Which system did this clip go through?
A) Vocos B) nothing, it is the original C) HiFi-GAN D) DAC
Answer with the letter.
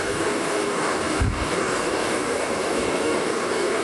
D